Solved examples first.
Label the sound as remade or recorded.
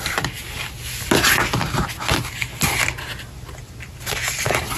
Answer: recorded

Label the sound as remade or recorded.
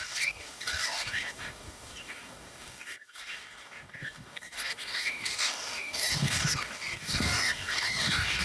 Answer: remade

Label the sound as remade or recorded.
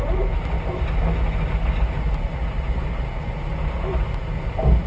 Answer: recorded